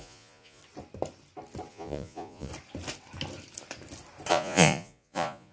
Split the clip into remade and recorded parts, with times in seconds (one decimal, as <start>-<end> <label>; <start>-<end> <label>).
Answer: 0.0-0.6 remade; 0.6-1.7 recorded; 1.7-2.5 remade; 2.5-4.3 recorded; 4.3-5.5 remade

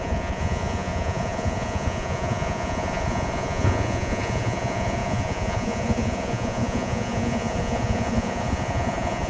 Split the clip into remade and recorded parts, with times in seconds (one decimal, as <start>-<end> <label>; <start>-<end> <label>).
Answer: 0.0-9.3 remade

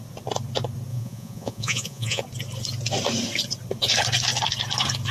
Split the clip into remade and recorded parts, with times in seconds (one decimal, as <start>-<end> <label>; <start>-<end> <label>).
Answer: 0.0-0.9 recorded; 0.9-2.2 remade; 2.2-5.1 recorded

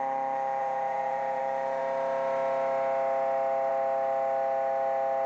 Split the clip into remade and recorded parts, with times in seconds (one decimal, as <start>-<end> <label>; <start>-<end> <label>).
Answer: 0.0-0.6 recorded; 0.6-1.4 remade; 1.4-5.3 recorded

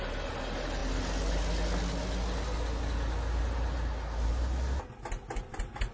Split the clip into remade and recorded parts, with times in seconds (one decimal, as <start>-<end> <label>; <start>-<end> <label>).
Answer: 0.0-5.9 recorded

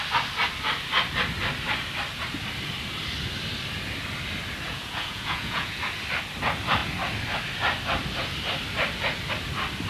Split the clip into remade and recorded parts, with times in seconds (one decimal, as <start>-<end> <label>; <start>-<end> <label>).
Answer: 0.0-4.7 recorded; 4.7-5.8 remade; 5.8-9.9 recorded

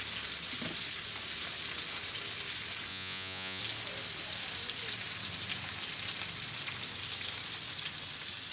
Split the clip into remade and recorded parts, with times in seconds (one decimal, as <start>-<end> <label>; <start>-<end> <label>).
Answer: 0.0-2.9 recorded; 2.9-3.6 remade; 3.6-8.5 recorded